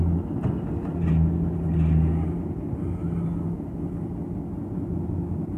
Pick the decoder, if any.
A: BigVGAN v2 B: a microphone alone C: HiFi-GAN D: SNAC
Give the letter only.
B